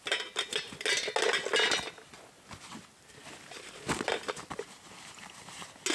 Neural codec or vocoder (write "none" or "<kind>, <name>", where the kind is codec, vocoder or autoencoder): none